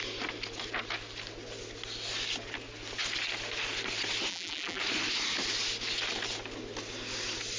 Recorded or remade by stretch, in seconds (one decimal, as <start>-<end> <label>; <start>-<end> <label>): 0.0-4.3 recorded; 4.3-4.8 remade; 4.8-7.6 recorded